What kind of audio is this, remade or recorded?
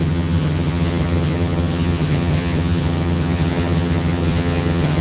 remade